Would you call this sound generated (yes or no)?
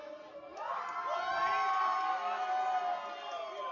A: no